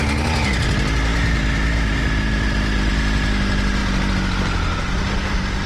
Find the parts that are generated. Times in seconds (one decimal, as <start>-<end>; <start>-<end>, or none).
none